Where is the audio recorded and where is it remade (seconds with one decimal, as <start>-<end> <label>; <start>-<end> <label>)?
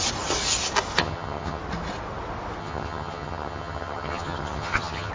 0.0-1.0 recorded; 1.0-1.6 remade; 1.6-2.6 recorded; 2.6-5.1 remade